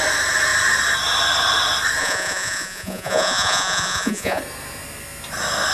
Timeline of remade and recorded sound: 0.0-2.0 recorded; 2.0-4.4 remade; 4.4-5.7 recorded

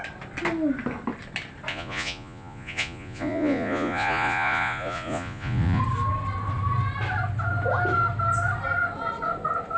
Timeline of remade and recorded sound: 0.0-1.7 recorded; 1.7-5.8 remade; 5.8-9.8 recorded

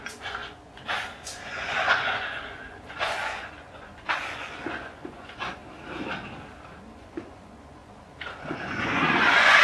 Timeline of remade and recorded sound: 0.0-5.6 remade; 5.6-6.8 recorded; 6.8-9.6 remade

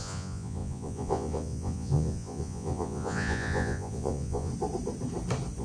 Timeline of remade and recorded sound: 0.0-4.5 remade; 4.5-5.6 recorded

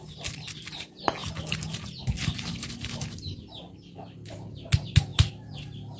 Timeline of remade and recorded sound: 0.0-6.0 recorded

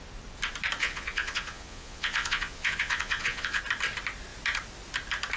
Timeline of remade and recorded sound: 0.0-0.8 recorded; 0.8-3.6 remade; 3.6-5.4 recorded

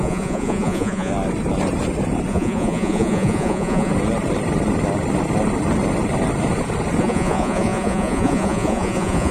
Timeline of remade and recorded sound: 0.0-1.1 remade; 1.1-2.3 recorded; 2.3-3.9 remade; 3.9-7.0 recorded; 7.0-9.3 remade

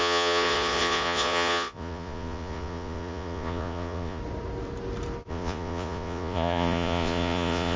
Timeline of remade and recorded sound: 0.0-4.2 remade; 4.2-5.3 recorded; 5.3-7.8 remade